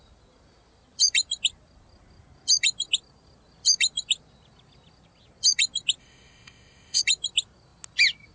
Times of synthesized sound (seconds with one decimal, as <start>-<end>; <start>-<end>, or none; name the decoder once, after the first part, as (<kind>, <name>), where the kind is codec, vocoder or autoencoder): 6.0-7.0 (codec, ZipCodec)